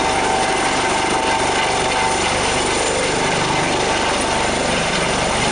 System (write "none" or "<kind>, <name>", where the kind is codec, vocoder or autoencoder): none